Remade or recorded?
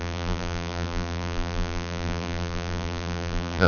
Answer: remade